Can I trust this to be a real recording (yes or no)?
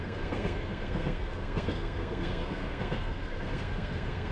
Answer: no